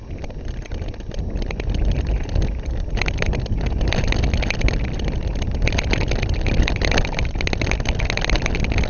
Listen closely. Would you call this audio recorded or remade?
recorded